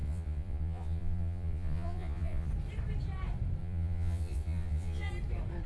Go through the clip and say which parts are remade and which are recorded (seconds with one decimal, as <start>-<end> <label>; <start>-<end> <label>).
0.0-2.5 remade; 2.5-3.6 recorded; 3.6-5.1 remade; 5.1-5.7 recorded